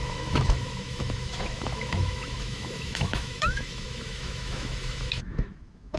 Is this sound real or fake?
fake